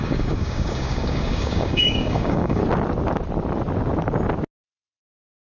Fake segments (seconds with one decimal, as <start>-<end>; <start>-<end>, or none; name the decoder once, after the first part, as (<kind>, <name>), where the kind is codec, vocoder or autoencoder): 0.0-2.6 (codec, DAC); 5.0-5.5